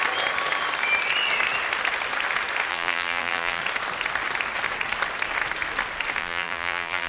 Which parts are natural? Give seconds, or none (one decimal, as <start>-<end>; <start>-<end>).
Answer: 0.0-2.7; 3.6-6.2